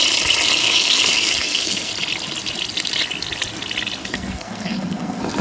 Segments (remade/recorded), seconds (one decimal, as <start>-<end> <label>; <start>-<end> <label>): 0.0-0.6 recorded; 0.6-1.9 remade; 1.9-4.0 recorded; 4.0-5.4 remade